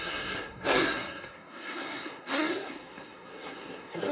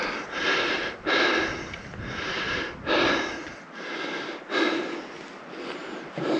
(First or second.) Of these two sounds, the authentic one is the second